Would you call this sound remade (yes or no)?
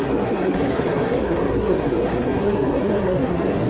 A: yes